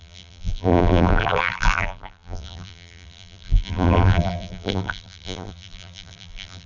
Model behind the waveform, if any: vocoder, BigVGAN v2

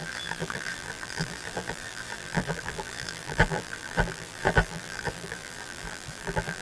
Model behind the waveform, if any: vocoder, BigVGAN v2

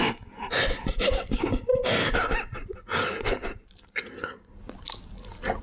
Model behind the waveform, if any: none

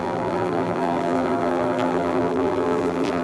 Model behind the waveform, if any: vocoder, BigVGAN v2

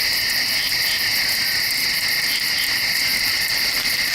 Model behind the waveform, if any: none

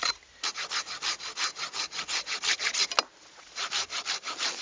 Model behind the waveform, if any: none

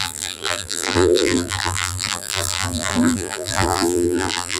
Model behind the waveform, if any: vocoder, BigVGAN v2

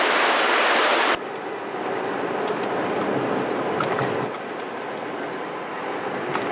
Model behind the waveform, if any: none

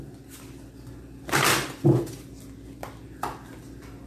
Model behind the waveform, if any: none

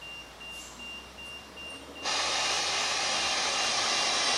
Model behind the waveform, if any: none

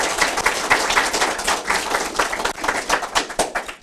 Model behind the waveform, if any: none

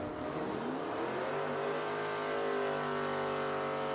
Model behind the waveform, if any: none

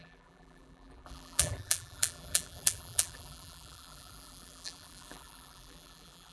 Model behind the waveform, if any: vocoder, BigVGAN v2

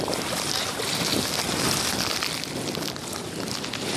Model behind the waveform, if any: none